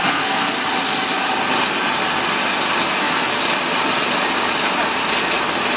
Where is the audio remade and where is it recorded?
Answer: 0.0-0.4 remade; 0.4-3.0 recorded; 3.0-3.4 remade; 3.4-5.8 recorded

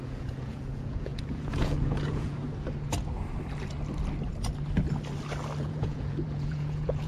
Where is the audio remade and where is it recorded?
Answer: 0.0-2.4 remade; 2.4-5.6 recorded; 5.6-7.1 remade

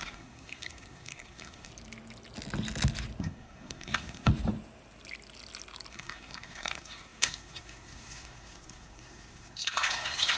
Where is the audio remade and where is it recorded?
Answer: 0.0-1.7 remade; 1.7-3.2 recorded; 3.2-4.3 remade; 4.3-5.9 recorded; 5.9-10.4 remade

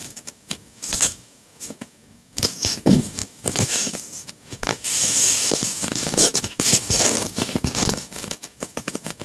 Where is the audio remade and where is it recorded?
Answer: 0.0-9.2 remade

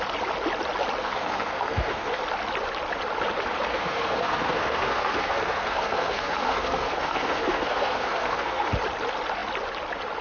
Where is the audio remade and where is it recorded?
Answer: 0.0-1.0 recorded; 1.0-2.2 remade; 2.2-3.7 recorded; 3.7-8.7 remade; 8.7-10.2 recorded